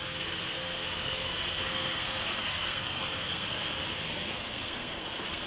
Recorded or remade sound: remade